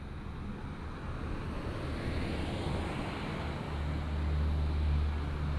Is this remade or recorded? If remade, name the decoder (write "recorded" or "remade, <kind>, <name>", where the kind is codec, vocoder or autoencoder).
recorded